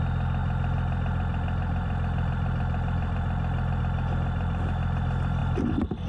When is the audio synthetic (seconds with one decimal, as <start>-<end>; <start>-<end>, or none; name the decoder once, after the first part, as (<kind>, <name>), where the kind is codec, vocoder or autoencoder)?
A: 0.4-3.8 (vocoder, BigVGAN v2)